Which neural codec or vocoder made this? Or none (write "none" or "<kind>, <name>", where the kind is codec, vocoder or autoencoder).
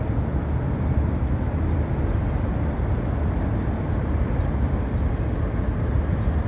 none